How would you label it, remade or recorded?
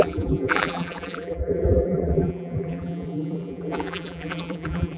remade